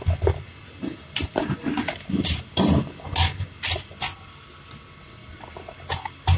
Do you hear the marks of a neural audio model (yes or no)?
no